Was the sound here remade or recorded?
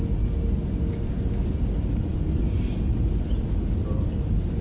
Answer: recorded